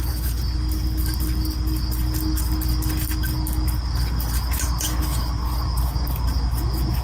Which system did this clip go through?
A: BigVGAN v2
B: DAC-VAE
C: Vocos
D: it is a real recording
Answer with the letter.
D